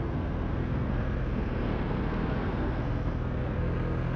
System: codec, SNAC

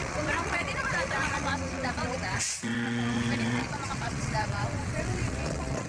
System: vocoder, WaveNeXt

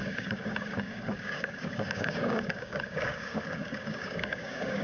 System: codec, DAC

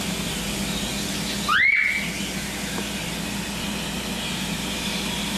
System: none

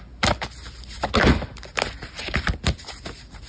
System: none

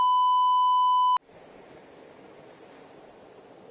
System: none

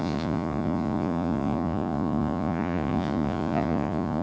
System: vocoder, Vocos